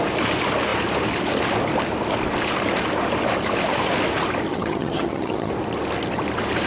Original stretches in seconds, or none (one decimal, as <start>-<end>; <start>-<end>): 0.0-4.5; 5.5-6.7